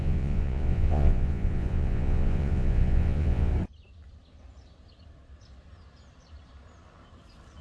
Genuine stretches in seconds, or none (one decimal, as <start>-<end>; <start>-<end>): 3.5-7.6